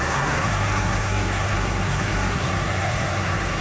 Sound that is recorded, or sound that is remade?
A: remade